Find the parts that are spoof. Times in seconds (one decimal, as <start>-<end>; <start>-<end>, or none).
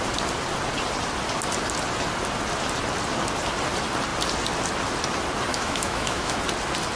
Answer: 5.5-6.4